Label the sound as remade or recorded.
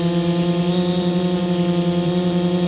remade